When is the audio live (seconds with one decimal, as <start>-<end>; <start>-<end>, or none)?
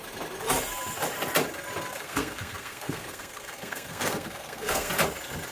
0.0-1.9; 4.9-5.5